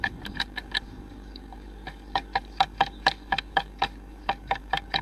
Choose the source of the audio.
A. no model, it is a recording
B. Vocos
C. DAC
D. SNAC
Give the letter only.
C